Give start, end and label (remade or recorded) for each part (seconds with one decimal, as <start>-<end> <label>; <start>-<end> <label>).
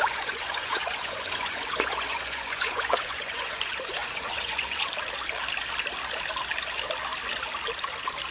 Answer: 0.0-4.9 remade; 4.9-8.3 recorded